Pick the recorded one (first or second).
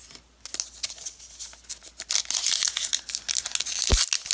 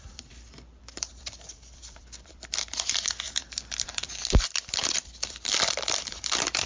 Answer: first